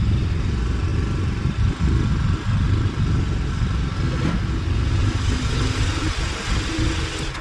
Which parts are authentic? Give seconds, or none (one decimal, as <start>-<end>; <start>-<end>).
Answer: 0.0-7.4

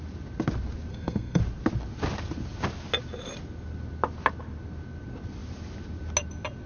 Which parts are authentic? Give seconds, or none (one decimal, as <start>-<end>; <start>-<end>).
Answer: 0.0-0.9; 1.4-6.7

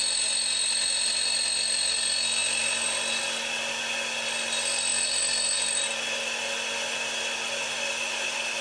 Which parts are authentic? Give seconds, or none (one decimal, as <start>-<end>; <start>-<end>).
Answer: 0.0-8.6

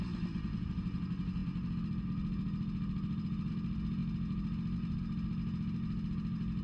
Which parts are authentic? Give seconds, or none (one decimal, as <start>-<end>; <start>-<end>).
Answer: 0.0-6.6

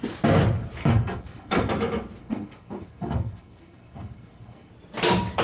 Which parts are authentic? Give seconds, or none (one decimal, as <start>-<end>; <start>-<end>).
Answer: 0.0-0.8; 1.7-2.2; 4.7-5.4